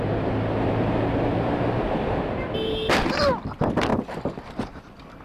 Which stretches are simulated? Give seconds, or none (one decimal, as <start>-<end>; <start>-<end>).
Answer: none